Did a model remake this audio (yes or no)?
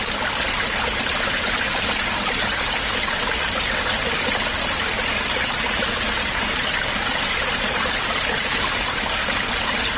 no